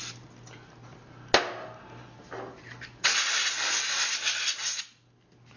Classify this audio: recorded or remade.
recorded